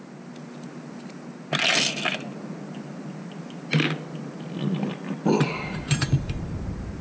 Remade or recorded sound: recorded